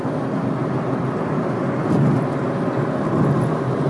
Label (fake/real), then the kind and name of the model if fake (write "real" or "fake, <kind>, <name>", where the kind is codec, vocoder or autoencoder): real